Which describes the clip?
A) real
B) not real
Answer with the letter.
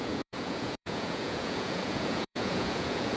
B